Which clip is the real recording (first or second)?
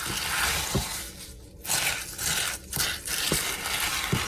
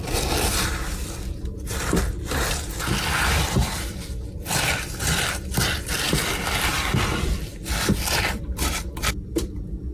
first